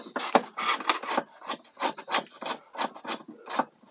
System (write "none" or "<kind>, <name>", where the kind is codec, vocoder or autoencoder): none